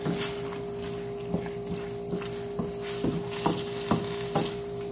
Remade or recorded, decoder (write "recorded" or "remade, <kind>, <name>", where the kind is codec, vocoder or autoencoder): recorded